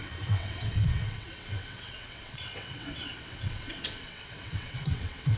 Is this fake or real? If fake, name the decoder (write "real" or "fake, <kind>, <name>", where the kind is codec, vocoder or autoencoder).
fake, vocoder, WaveNeXt